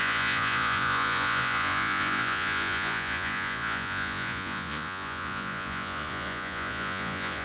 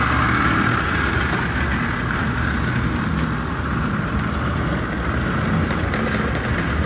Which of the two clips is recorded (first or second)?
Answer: second